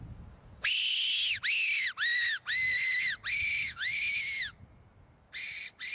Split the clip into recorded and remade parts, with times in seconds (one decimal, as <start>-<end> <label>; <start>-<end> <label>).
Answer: 0.0-5.9 recorded